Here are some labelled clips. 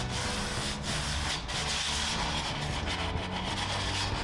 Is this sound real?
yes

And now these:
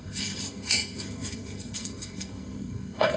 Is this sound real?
no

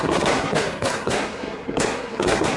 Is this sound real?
no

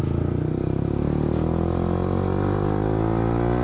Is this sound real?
yes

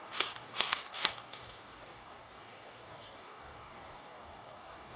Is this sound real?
no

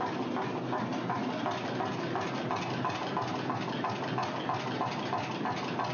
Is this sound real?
yes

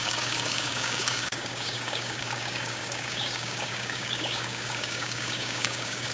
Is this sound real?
no